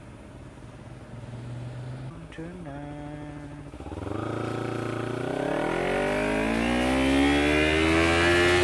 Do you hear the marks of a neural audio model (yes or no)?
no